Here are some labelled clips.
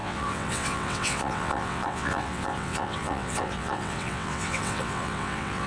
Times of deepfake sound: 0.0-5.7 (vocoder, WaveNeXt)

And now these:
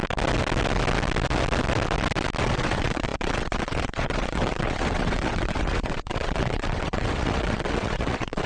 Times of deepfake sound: 2.4-8.5 (vocoder, WaveNeXt)

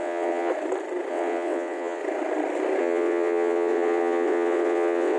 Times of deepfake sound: 0.0-0.5 (vocoder, WaveNeXt); 1.1-2.0; 2.8-5.2

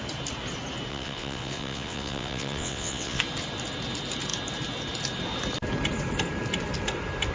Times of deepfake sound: 0.9-3.2 (vocoder, WaveNeXt)

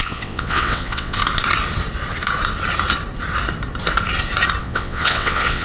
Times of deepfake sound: 0.0-1.2 (vocoder, WaveNeXt); 4.6-5.6